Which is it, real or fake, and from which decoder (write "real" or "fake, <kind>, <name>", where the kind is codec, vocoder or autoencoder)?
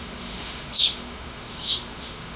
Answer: fake, autoencoder, DAC-VAE